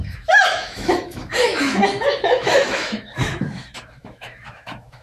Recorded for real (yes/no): no